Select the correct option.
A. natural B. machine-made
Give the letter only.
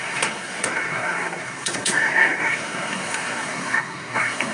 B